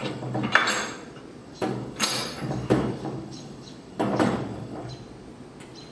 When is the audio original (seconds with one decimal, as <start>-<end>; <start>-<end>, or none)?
0.5-1.4; 4.9-5.9